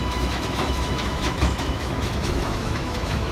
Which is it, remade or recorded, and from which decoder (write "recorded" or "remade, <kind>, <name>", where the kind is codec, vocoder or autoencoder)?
remade, autoencoder, DAC-VAE